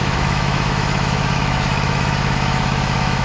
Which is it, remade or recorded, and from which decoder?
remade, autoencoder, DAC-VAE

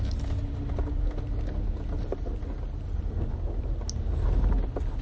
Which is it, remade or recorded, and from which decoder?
recorded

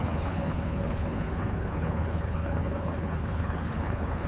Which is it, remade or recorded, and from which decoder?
remade, codec, HILCodec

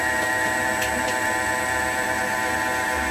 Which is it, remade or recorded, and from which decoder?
recorded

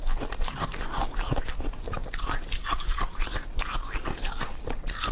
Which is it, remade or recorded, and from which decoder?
recorded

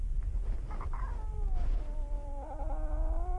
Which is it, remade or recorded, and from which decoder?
recorded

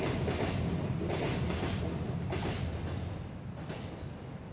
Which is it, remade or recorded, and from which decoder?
recorded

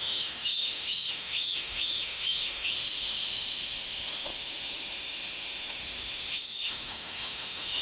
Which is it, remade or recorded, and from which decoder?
remade, autoencoder, DAC-VAE